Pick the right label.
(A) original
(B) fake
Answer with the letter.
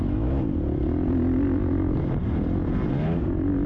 A